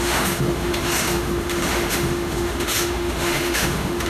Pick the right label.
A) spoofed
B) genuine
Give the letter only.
A